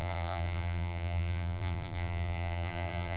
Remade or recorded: remade